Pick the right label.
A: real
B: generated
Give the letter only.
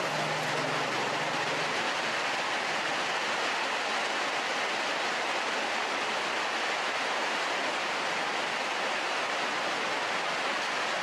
A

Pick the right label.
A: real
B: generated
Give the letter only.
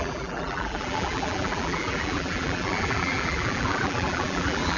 B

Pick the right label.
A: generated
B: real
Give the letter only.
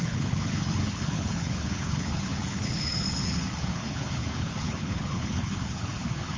A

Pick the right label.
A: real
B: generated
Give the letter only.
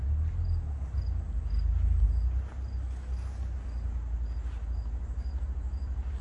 A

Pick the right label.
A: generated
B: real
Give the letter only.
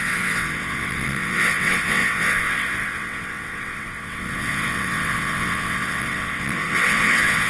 A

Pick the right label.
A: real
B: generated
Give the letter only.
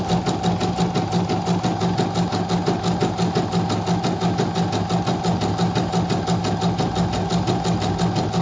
A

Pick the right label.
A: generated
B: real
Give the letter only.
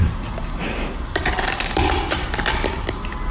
B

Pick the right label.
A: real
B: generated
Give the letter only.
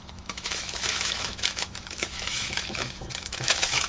B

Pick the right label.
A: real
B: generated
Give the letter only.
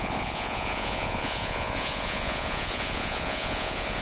B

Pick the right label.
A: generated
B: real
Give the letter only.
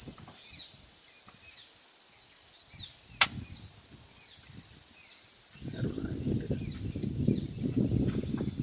B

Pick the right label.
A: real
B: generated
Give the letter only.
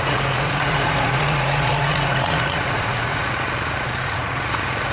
B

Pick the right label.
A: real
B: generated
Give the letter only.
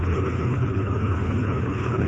B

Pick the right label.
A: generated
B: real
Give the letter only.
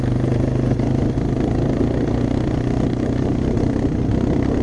B